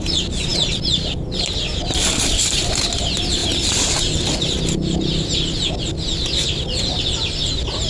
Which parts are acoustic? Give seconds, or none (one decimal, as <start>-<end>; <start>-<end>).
0.0-7.9

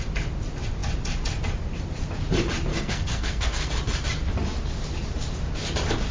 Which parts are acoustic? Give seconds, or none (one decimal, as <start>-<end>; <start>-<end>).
0.0-2.7; 3.7-6.1

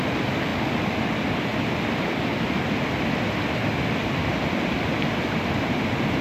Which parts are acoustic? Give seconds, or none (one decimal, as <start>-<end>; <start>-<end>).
0.0-0.5; 1.1-6.2

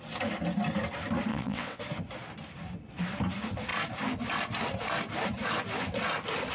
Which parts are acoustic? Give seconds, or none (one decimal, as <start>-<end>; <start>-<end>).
0.0-1.3; 1.8-6.5